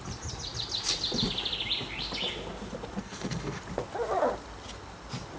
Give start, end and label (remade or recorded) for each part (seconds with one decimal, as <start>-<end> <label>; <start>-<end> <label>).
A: 0.0-3.0 recorded; 3.0-3.6 remade; 3.6-5.4 recorded